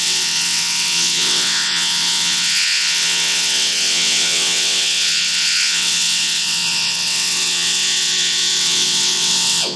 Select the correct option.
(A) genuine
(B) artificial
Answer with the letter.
B